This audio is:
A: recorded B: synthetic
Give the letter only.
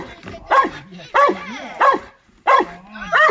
A